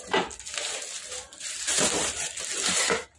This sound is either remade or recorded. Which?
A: recorded